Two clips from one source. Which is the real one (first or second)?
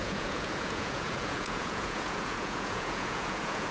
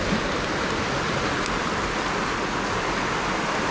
second